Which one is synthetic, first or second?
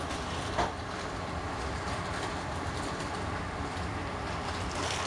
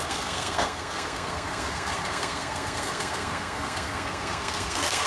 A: second